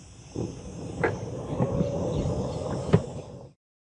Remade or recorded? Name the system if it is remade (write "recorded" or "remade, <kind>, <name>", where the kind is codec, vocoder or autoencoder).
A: recorded